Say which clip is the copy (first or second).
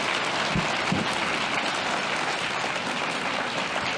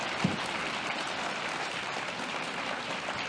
second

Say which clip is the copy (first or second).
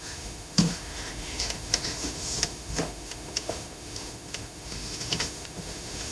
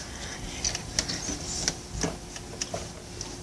first